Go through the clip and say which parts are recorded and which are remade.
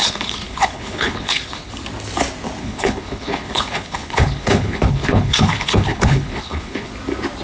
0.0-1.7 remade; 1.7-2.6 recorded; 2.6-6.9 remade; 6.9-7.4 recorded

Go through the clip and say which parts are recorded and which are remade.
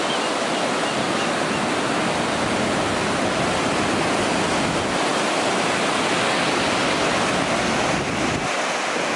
0.0-9.2 recorded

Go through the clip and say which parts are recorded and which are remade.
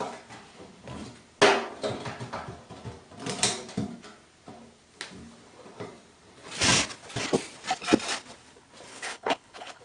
0.0-8.9 recorded; 8.9-9.8 remade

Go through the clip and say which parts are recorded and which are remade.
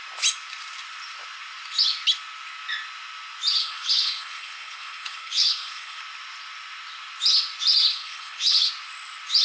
0.0-3.6 recorded; 3.6-6.0 remade; 6.0-7.9 recorded; 7.9-8.7 remade; 8.7-9.4 recorded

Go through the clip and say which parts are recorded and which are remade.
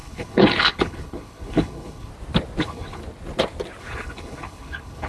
0.0-2.1 remade; 2.1-2.6 recorded; 2.6-3.0 remade; 3.0-3.8 recorded; 3.8-5.1 remade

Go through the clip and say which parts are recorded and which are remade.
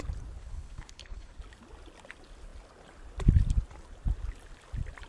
0.0-0.4 recorded; 0.4-1.4 remade; 1.4-5.1 recorded